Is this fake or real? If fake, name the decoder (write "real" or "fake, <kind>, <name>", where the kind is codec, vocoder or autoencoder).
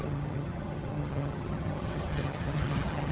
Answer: fake, vocoder, HiFi-GAN